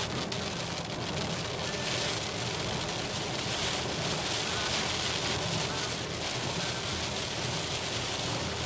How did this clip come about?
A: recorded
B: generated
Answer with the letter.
A